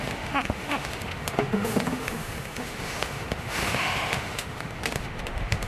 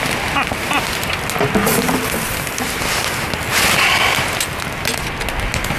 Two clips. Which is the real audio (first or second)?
second